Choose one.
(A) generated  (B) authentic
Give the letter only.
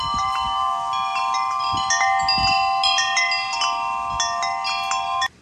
B